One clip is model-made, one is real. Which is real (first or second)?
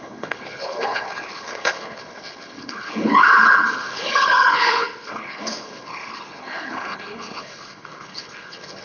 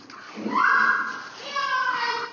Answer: second